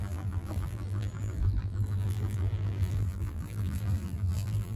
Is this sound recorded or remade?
remade